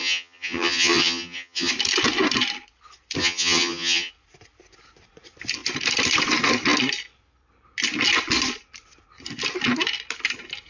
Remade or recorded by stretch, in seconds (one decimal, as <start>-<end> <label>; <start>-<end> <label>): 0.0-1.7 remade; 1.7-3.2 recorded; 3.2-4.1 remade; 4.1-10.7 recorded